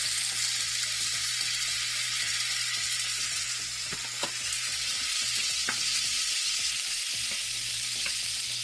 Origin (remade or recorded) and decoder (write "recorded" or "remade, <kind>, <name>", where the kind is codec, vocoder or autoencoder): recorded